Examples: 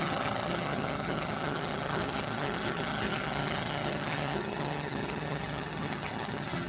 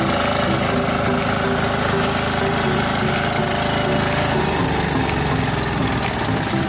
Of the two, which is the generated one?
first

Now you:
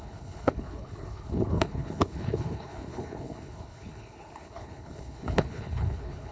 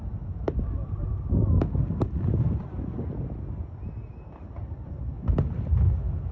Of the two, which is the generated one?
first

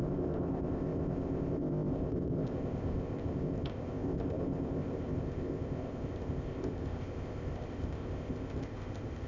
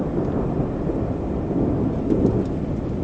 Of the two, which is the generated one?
first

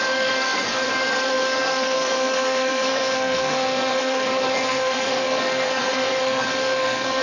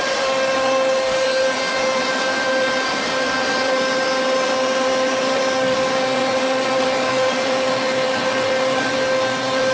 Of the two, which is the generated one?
first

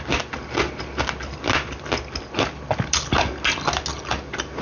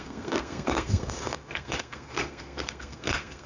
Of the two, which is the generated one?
second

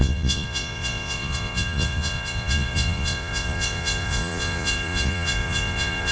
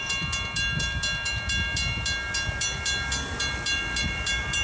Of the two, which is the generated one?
first